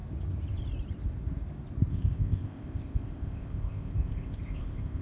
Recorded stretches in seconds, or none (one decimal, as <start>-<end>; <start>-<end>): 0.0-1.9